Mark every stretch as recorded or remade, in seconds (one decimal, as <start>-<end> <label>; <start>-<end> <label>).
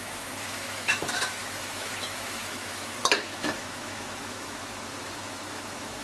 0.0-6.0 remade